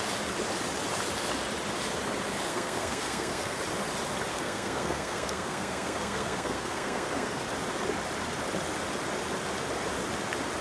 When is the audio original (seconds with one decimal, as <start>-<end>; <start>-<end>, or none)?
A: 0.0-2.5; 3.6-4.3; 7.4-10.6